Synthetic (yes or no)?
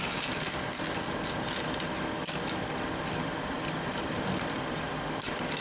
no